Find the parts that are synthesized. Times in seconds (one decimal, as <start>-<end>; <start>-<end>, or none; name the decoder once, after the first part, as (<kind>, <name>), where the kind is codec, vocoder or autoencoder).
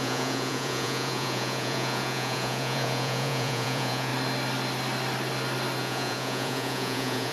0.0-4.1 (vocoder, Vocos); 5.8-7.3